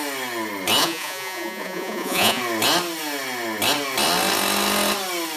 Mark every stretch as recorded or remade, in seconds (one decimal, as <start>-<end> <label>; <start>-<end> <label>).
0.0-0.8 recorded; 0.8-2.4 remade; 2.4-5.4 recorded